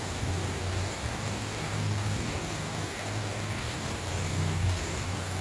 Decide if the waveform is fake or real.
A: fake